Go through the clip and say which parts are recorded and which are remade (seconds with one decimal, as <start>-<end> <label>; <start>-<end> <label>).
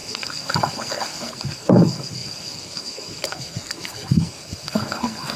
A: 0.0-5.4 remade